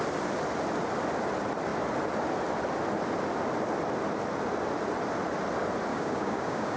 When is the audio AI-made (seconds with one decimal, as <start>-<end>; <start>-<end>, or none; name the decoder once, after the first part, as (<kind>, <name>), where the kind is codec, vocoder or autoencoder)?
5.9-6.8 (codec, DAC)